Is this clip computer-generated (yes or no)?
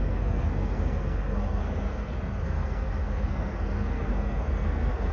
yes